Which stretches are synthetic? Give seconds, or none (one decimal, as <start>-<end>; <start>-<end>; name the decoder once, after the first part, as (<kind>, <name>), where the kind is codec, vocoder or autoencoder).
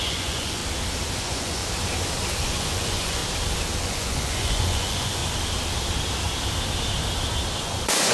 0.0-0.6 (vocoder, Vocos); 1.2-1.6; 2.4-3.2; 3.8-5.2; 7.6-8.1